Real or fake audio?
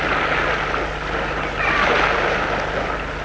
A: real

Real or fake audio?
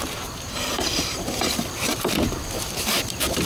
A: fake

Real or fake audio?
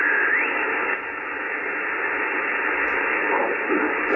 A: real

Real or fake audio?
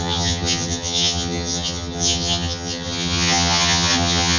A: fake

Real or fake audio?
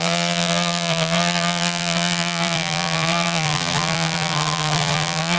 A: fake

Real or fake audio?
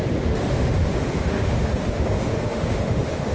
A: fake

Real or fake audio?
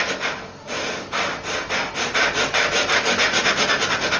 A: real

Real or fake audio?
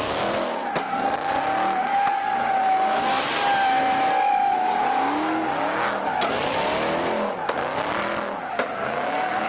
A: real